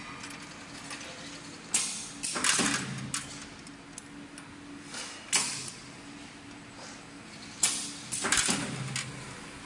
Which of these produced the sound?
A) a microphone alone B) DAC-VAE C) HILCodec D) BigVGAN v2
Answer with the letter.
A